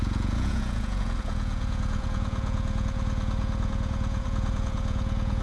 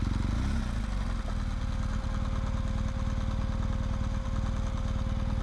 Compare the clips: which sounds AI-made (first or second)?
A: first